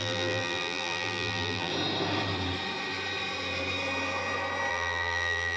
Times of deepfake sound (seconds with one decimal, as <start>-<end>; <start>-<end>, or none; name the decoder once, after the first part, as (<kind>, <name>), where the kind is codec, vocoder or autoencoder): 0.0-1.7 (vocoder, BigVGAN v2); 4.7-5.6

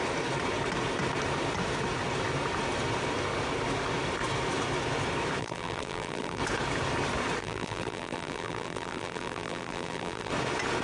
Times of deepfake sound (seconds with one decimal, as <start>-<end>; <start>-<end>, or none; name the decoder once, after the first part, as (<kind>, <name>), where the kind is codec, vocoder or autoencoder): 5.4-6.4 (vocoder, BigVGAN v2); 7.4-10.3

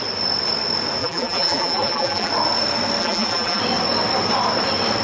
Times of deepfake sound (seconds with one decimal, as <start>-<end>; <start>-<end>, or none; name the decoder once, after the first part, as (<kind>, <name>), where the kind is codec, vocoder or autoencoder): 1.0-2.3 (vocoder, BigVGAN v2); 3.0-3.6

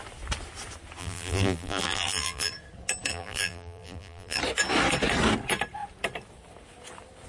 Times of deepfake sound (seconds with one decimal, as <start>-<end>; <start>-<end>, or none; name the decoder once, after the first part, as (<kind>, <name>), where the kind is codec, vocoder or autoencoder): 1.0-2.5 (vocoder, BigVGAN v2); 3.1-4.4